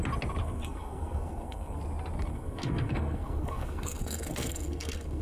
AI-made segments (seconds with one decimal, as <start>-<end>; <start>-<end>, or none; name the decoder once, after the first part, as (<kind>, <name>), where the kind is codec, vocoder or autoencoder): 0.4-1.8 (codec, SNAC); 2.3-5.2

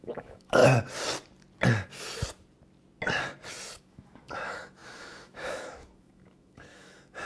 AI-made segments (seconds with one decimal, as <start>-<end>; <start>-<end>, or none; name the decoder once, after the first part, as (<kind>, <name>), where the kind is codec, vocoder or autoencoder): 0.0-0.6 (autoencoder, DAC-VAE); 3.8-7.2

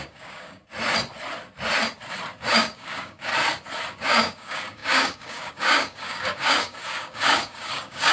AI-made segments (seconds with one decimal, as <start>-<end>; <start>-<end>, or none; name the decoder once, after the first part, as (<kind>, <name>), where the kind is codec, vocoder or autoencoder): 0.0-0.6 (codec, DAC); 2.5-3.3; 3.9-8.1

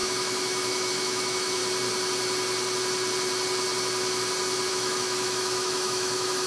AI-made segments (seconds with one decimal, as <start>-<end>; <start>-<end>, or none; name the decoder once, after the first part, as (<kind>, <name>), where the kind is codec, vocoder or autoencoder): 0.0-1.6 (autoencoder, DAC-VAE); 4.7-6.5